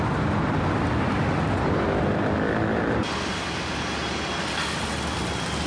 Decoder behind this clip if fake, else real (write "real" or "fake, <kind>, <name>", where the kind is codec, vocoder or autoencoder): real